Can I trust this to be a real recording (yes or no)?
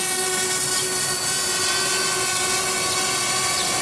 yes